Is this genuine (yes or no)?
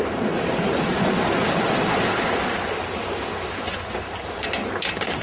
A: yes